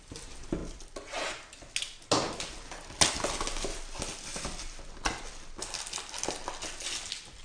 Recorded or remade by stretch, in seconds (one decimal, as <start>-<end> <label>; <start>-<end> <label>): 0.0-7.4 recorded

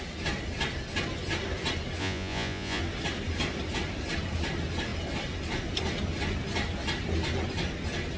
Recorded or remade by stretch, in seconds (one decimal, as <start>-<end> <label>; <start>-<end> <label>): 0.0-2.0 recorded; 2.0-2.8 remade; 2.8-8.2 recorded

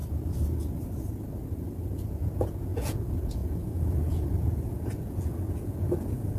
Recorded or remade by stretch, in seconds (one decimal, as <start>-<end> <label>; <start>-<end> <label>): 0.0-1.8 recorded; 1.8-6.4 remade

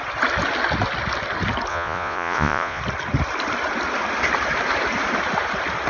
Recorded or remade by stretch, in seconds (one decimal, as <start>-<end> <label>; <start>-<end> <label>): 0.0-1.7 recorded; 1.7-2.8 remade; 2.8-5.9 recorded

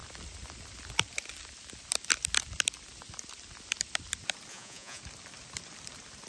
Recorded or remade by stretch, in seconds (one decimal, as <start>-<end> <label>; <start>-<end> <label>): 0.0-4.5 recorded; 4.5-5.0 remade; 5.0-6.3 recorded

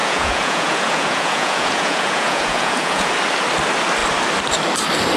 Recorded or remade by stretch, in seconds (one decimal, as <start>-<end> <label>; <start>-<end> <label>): 0.0-3.1 remade; 3.1-5.2 recorded

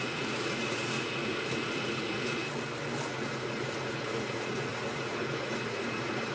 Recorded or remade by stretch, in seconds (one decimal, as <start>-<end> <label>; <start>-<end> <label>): 0.0-2.4 remade; 2.4-3.1 recorded; 3.1-6.3 remade